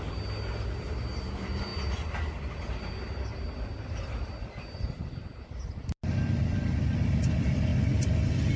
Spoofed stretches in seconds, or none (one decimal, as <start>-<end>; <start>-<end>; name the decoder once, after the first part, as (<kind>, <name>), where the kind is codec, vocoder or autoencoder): none